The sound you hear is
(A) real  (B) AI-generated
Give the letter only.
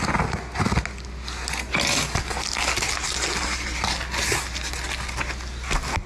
A